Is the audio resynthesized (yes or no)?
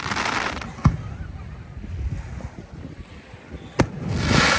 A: no